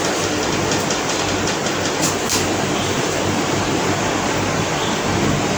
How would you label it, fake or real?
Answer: real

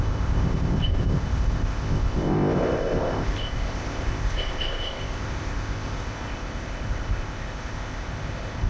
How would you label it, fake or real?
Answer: fake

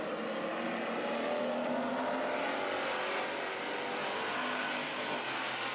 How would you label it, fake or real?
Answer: real